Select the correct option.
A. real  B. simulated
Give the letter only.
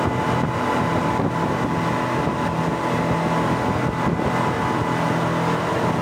A